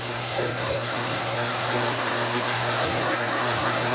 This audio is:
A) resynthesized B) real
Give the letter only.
A